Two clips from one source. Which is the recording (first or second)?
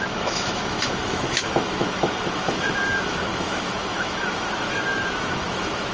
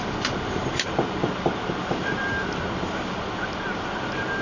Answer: second